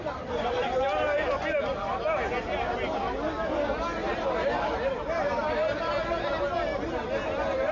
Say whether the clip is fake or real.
real